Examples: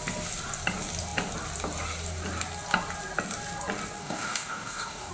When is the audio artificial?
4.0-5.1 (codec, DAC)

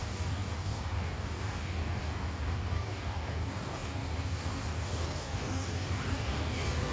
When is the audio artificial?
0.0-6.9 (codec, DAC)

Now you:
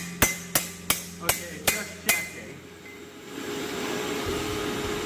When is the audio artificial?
1.5-4.6 (vocoder, BigVGAN v2)